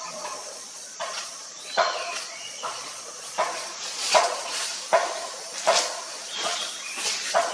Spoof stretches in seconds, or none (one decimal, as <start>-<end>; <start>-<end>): 0.0-4.7; 6.3-7.5